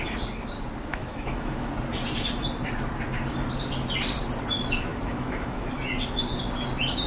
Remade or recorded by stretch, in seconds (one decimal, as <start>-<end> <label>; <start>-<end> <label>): 0.0-0.9 recorded; 0.9-1.7 remade; 1.7-4.9 recorded; 4.9-5.7 remade; 5.7-7.1 recorded